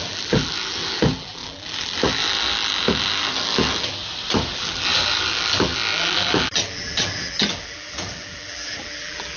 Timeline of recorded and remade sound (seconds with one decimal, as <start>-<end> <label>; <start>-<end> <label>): 0.0-4.0 remade; 4.0-4.5 recorded; 4.5-9.4 remade